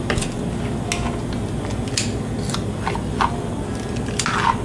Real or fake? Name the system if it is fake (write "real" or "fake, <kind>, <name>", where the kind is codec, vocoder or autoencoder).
real